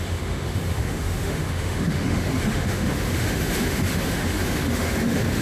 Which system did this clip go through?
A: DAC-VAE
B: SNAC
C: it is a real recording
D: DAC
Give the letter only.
A